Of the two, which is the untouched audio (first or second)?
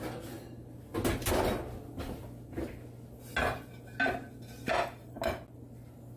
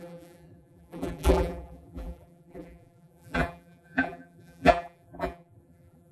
first